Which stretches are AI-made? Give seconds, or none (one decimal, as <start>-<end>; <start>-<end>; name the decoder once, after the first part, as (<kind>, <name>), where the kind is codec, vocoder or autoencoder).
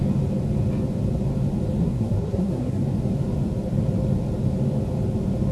1.8-2.8 (codec, SNAC)